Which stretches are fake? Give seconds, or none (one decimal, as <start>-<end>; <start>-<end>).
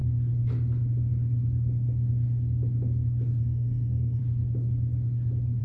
3.4-4.2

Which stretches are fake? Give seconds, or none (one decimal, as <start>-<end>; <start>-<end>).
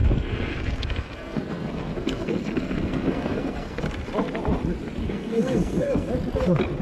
0.0-3.8; 5.0-6.1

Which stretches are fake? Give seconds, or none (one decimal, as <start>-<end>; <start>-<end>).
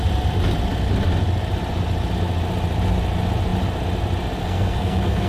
4.4-5.3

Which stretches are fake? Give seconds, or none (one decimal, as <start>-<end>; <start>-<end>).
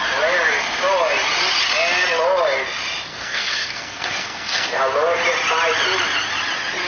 3.1-4.8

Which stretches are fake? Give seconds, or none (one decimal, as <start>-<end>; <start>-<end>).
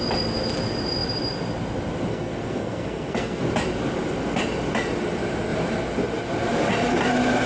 2.1-3.4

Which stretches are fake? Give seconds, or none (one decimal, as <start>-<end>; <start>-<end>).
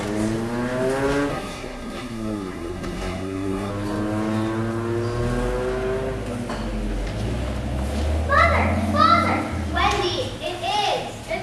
1.3-3.7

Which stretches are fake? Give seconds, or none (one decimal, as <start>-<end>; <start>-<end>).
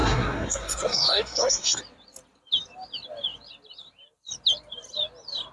0.0-1.8